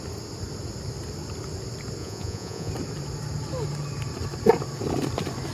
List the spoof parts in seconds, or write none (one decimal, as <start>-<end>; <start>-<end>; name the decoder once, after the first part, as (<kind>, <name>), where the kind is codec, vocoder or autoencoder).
2.0-2.7 (vocoder, Vocos)